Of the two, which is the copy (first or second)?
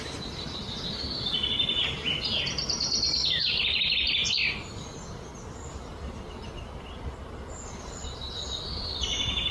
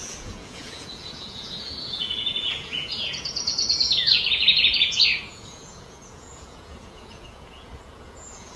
second